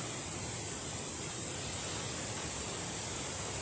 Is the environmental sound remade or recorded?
recorded